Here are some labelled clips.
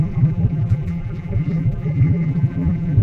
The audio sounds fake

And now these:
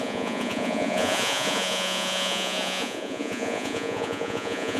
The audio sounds fake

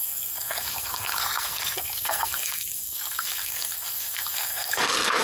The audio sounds fake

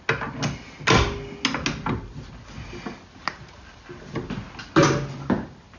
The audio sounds real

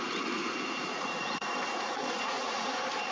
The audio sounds fake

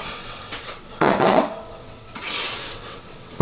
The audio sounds fake